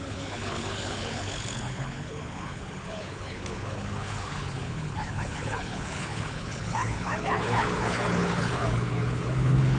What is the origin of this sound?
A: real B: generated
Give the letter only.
B